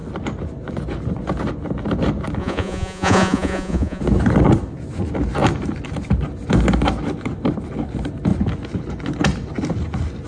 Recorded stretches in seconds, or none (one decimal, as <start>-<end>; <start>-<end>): 0.0-2.4; 4.0-10.3